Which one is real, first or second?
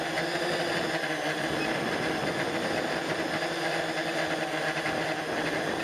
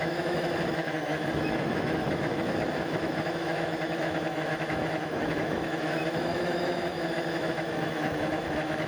first